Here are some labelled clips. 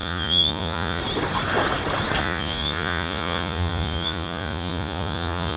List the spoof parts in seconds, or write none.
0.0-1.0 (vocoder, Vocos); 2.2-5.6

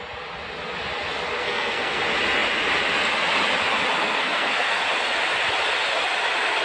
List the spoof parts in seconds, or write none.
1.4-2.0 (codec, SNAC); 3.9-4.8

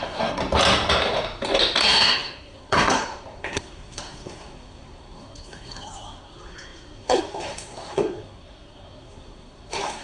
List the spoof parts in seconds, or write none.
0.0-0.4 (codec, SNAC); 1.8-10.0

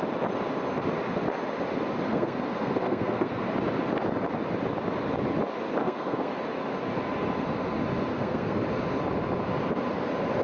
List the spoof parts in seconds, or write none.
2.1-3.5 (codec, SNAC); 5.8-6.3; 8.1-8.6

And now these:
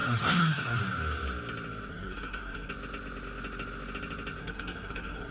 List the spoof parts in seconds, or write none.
0.0-0.8 (codec, SNAC); 1.9-2.7; 4.4-5.3

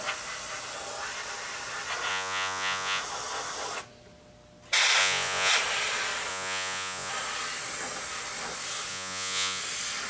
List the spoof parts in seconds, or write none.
2.1-3.0 (vocoder, Vocos); 5.0-5.5; 6.3-7.1; 8.9-9.6

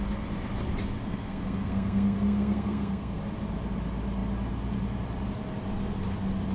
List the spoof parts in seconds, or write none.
1.0-3.2 (codec, SNAC)

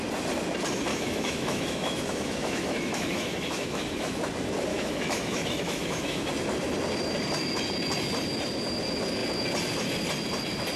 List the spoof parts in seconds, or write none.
0.9-4.2 (autoencoder, DAC-VAE); 4.7-6.3